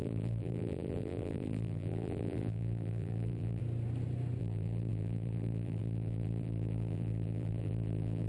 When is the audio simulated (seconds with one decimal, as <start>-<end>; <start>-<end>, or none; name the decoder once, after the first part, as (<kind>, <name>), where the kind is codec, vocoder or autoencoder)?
0.0-3.6 (vocoder, BigVGAN v2); 4.4-8.3